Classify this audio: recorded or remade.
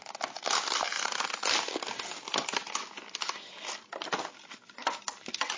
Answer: recorded